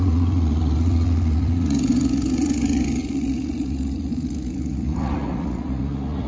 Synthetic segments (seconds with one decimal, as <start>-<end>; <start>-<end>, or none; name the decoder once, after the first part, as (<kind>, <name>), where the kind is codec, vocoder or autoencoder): 0.0-6.3 (vocoder, Vocos)